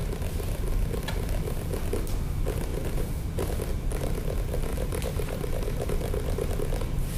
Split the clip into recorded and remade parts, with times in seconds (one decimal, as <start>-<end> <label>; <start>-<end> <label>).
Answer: 0.0-2.7 recorded; 2.7-3.5 remade; 3.5-4.7 recorded; 4.7-6.5 remade; 6.5-7.2 recorded